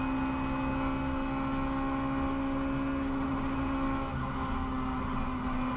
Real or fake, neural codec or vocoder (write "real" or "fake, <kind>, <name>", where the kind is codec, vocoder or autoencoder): real